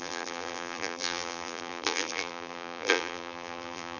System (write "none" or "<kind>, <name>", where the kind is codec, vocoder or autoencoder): vocoder, BigVGAN v2